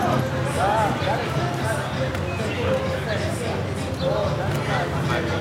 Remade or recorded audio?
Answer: recorded